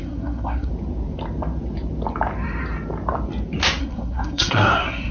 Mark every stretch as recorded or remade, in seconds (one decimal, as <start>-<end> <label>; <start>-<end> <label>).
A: 0.0-0.7 remade; 0.7-3.8 recorded; 3.8-5.1 remade